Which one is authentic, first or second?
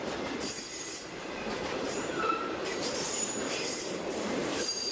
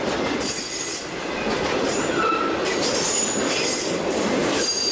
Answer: second